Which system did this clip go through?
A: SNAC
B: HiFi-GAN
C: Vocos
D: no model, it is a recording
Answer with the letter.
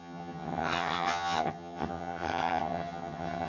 B